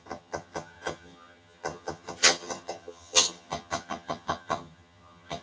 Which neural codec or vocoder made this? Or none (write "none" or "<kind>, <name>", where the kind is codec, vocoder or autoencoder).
vocoder, HiFi-GAN